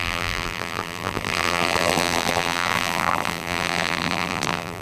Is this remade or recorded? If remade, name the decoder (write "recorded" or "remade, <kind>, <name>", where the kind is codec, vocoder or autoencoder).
remade, vocoder, BigVGAN v2